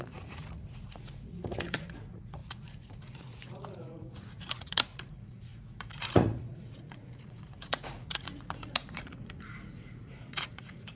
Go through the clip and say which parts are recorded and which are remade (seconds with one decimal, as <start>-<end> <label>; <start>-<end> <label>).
0.0-10.9 remade

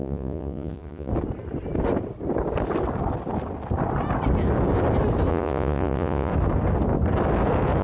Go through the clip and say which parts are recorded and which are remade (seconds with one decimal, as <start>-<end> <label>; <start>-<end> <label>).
0.0-1.1 remade; 1.1-5.3 recorded; 5.3-6.3 remade; 6.3-7.8 recorded

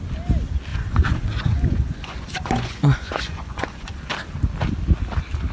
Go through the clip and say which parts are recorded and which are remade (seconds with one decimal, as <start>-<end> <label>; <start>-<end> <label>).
0.0-0.7 recorded; 0.7-4.0 remade; 4.0-5.5 recorded

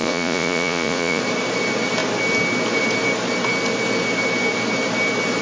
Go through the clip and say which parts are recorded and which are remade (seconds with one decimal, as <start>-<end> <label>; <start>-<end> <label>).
0.0-1.2 remade; 1.2-5.4 recorded

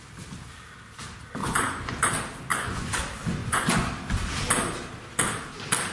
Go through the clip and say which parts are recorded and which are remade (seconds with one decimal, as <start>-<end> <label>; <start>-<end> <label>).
0.0-1.4 recorded; 1.4-2.1 remade; 2.1-2.5 recorded; 2.5-3.0 remade; 3.0-3.4 recorded; 3.4-3.9 remade; 3.9-5.9 recorded